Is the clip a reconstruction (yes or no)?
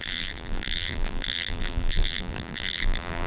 yes